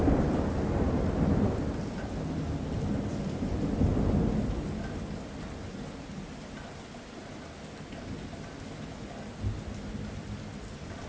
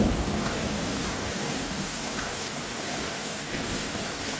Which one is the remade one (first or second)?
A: second